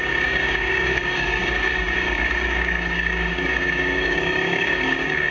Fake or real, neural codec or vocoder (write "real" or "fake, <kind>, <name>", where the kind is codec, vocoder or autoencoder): fake, codec, DAC